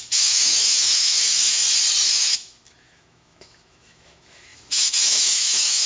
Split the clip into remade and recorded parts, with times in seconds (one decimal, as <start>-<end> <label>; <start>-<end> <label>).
0.0-1.6 remade; 1.6-2.1 recorded; 2.1-5.9 remade

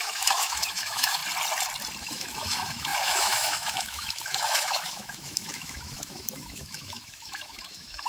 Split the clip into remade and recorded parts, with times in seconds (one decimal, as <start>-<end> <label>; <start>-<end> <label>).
0.0-1.2 remade; 1.2-2.0 recorded; 2.0-8.1 remade

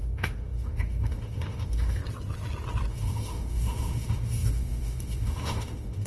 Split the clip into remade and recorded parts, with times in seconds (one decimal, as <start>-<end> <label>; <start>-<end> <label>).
0.0-2.0 remade; 2.0-2.9 recorded; 2.9-6.1 remade

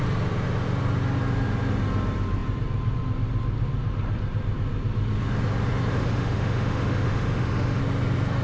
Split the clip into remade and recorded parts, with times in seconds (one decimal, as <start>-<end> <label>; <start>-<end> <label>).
0.0-5.9 recorded; 5.9-7.8 remade; 7.8-8.4 recorded

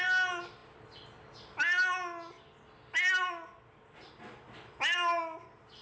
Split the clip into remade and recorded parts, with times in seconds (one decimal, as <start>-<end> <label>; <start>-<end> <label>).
0.0-5.8 recorded

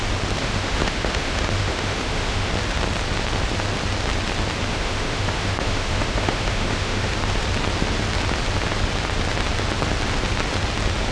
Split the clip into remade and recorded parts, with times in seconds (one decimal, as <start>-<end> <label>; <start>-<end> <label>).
0.0-0.4 recorded; 0.4-2.5 remade; 2.5-4.7 recorded; 4.7-7.1 remade; 7.1-11.1 recorded

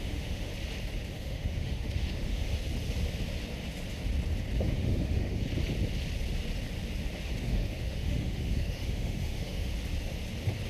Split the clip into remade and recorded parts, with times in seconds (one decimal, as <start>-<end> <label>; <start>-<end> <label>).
0.0-0.5 remade; 0.5-1.1 recorded; 1.1-2.6 remade; 2.6-4.6 recorded; 4.6-5.4 remade; 5.4-7.4 recorded; 7.4-9.7 remade; 9.7-10.7 recorded

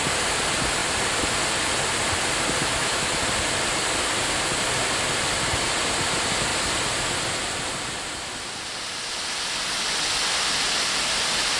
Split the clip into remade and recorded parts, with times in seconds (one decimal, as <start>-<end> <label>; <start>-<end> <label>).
0.0-2.6 recorded; 2.6-3.1 remade; 3.1-11.6 recorded